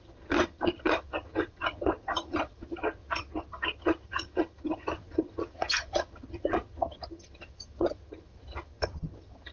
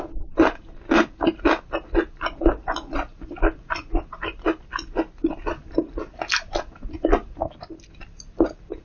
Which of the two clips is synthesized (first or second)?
first